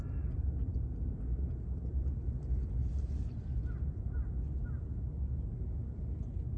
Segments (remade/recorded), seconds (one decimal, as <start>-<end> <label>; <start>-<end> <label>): 0.0-6.6 recorded